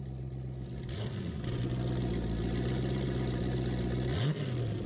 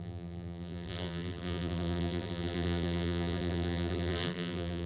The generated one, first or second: second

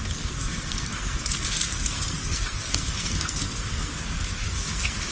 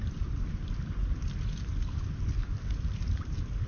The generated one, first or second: first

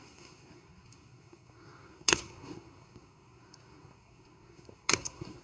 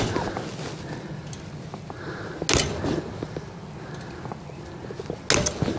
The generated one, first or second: first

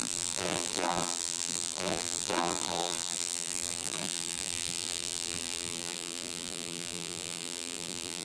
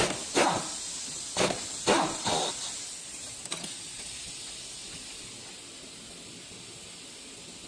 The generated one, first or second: first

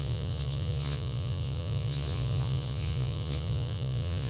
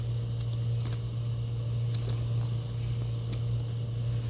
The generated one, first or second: first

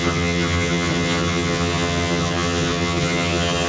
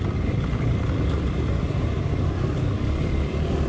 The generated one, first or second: first